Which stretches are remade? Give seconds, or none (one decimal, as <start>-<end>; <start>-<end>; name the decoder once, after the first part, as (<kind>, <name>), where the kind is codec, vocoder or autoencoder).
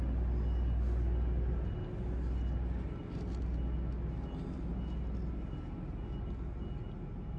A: none